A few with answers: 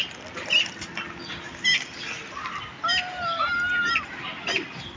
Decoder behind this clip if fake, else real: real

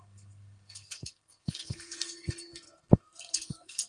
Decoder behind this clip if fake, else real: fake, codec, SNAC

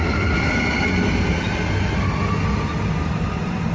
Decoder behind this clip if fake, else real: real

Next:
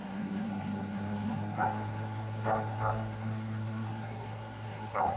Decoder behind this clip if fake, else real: fake, codec, SNAC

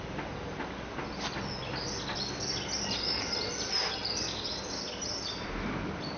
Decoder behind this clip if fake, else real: real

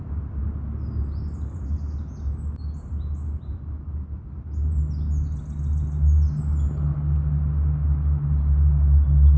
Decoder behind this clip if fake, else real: real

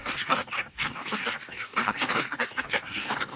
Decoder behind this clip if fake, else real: fake, codec, DAC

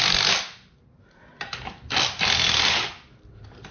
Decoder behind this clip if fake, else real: real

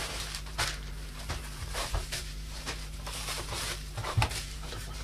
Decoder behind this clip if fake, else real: fake, vocoder, BigVGAN v2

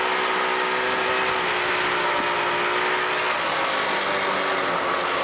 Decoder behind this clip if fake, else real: real